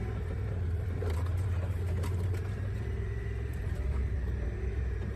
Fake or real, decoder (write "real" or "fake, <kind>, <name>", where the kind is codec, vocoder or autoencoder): fake, vocoder, BigVGAN v2